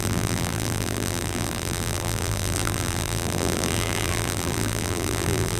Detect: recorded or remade remade